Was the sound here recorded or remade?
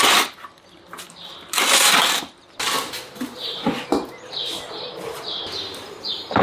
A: recorded